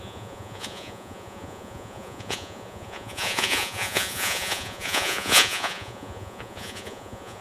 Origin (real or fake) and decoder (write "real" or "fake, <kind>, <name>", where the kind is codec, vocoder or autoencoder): fake, vocoder, Vocos